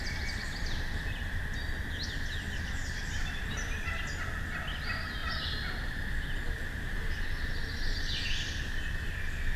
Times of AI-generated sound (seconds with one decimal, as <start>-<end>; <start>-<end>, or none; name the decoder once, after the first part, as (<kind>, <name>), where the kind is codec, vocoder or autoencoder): 0.0-1.4 (vocoder, BigVGAN v2); 2.8-3.9; 5.2-5.9